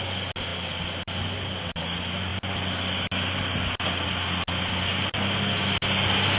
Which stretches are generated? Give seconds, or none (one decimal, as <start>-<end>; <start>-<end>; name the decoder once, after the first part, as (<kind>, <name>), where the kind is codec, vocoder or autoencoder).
none